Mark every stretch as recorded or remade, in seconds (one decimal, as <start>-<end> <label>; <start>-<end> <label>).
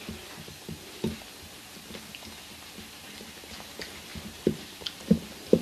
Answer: 0.0-4.1 recorded; 4.1-4.9 remade; 4.9-5.6 recorded